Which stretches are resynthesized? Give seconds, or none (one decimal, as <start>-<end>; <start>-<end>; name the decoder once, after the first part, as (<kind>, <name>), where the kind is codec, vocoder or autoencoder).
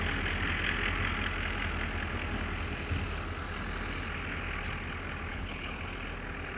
5.3-5.8 (codec, HILCodec)